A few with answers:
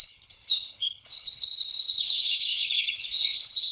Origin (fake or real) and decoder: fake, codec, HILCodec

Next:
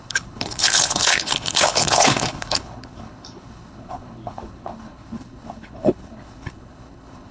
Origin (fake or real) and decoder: fake, codec, HILCodec